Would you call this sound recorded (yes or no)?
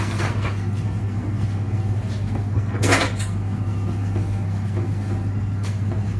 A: no